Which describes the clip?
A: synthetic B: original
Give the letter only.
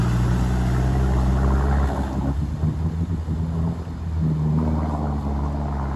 B